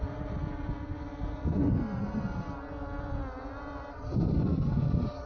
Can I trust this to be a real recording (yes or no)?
yes